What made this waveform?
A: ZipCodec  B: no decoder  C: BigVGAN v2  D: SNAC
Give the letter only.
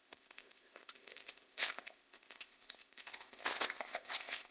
A